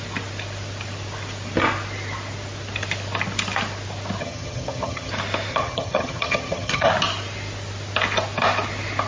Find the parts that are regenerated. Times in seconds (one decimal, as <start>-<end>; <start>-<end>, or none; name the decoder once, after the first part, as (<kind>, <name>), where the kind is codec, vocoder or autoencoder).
4.2-5.1 (vocoder, HiFi-GAN); 5.5-6.9

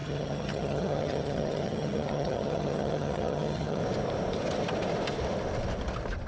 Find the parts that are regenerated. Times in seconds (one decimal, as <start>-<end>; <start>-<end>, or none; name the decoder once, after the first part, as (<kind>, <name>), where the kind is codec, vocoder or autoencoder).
0.0-3.8 (vocoder, HiFi-GAN)

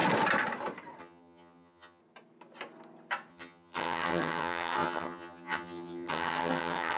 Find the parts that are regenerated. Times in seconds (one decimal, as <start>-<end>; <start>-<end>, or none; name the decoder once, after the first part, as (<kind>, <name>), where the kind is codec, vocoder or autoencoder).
1.0-2.0 (vocoder, HiFi-GAN); 3.3-7.0